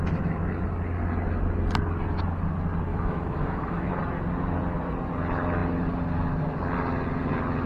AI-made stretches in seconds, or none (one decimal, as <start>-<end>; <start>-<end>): 2.9-3.9